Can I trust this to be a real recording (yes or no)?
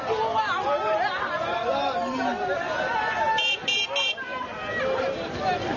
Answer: yes